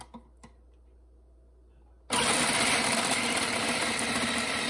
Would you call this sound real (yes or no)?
yes